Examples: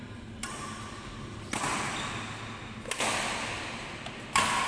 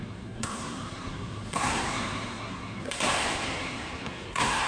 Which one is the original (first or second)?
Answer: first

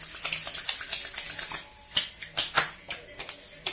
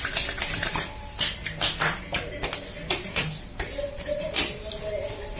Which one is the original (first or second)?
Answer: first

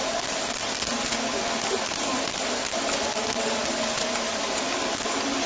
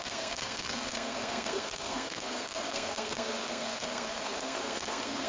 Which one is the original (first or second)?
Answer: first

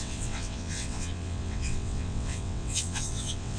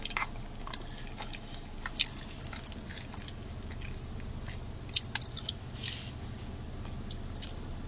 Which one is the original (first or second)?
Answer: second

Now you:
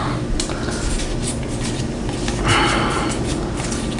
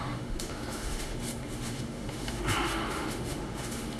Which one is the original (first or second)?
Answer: first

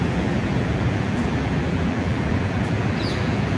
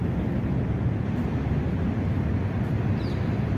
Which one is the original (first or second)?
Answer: second